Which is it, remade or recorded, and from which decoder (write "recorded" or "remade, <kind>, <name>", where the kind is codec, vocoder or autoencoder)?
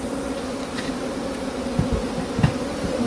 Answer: recorded